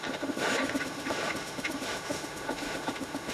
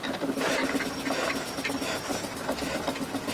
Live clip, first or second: second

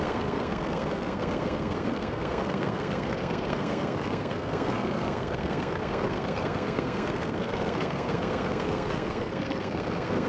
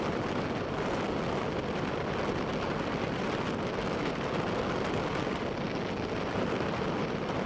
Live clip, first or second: second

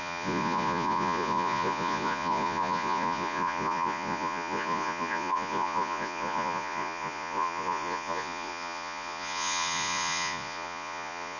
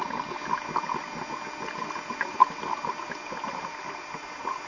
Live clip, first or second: second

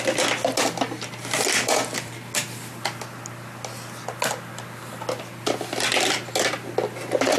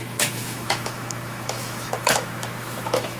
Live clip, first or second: first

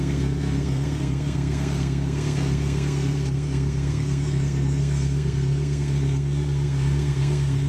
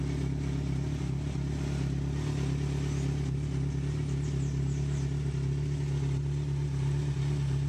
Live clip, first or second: second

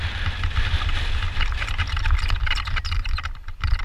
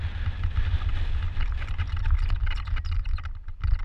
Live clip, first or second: second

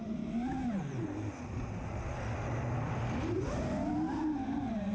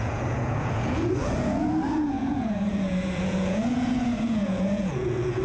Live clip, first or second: first